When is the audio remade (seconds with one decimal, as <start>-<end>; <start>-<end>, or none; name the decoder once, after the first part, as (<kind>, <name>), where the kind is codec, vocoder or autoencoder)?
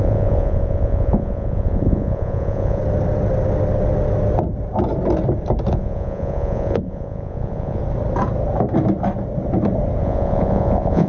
0.0-2.8 (vocoder, Vocos); 5.7-7.8; 10.0-11.1